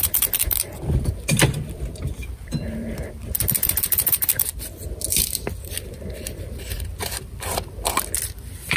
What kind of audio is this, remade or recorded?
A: remade